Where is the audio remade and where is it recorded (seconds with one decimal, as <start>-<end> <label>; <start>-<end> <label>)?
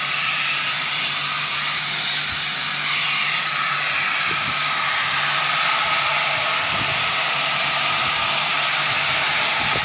0.0-9.8 recorded